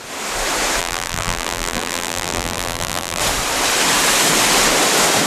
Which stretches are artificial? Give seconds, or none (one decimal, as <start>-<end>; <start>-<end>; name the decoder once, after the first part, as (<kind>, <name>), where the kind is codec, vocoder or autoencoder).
0.8-3.2 (vocoder, BigVGAN v2)